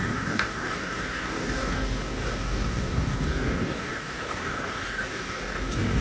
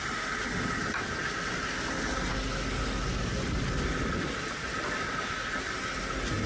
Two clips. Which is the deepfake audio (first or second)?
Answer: first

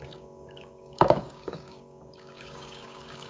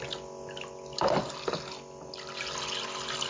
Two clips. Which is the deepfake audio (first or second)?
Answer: first